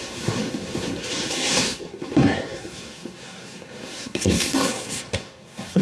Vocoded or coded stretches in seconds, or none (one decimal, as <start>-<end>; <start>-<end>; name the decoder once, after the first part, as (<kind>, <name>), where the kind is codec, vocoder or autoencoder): 0.0-5.8 (codec, SNAC)